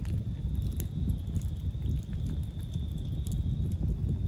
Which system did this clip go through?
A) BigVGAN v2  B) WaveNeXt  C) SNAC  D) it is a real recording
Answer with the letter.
D